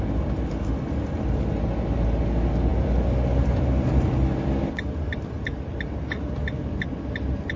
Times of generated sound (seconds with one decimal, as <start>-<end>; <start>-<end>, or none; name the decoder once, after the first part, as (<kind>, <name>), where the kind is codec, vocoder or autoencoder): none